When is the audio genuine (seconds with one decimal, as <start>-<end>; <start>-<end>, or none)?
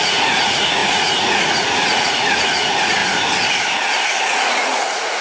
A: 3.0-4.2